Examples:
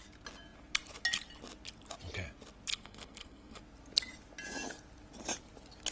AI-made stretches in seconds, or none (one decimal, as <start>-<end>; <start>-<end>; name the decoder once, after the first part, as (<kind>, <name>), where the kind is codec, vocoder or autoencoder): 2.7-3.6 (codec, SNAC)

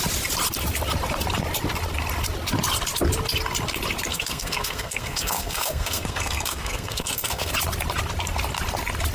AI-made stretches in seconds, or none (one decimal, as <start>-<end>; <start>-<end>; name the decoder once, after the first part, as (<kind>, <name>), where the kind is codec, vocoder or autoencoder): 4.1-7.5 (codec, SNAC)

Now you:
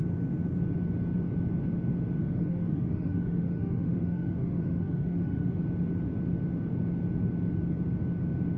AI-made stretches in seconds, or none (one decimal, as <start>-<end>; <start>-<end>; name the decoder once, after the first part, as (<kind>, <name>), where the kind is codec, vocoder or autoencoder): 2.2-5.6 (autoencoder, DAC-VAE)

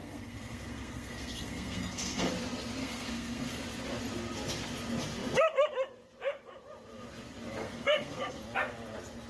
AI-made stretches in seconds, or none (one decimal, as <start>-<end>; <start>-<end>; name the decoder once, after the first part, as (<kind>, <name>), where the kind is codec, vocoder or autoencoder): 0.0-2.3 (codec, SNAC); 2.8-3.6; 7.6-8.4

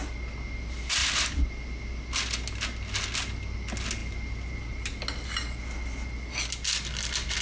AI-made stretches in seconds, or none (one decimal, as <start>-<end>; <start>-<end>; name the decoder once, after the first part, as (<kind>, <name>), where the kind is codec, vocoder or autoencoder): none